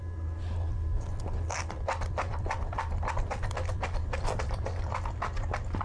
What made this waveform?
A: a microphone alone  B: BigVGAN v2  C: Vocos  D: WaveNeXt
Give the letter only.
A